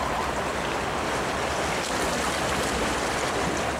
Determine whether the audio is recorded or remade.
recorded